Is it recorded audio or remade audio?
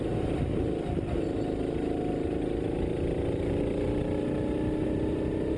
recorded